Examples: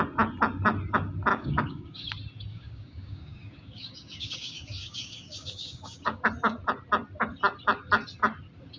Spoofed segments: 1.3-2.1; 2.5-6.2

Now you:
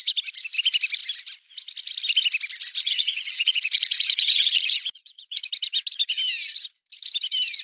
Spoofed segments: 2.6-5.4

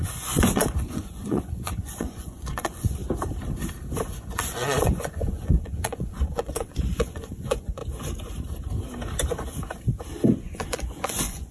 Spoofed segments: 0.0-3.0; 4.2-7.8; 10.4-11.5

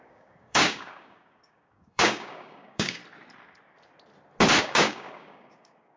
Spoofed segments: 0.0-3.0; 4.6-6.0

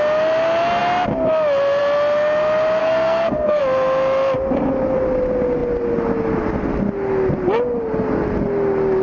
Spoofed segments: 2.8-3.6

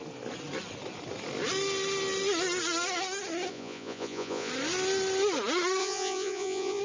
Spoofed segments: 3.5-4.5; 5.8-6.8

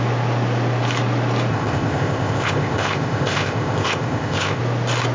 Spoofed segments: 1.5-4.6